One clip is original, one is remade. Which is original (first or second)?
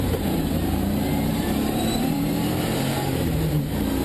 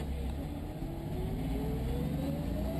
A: second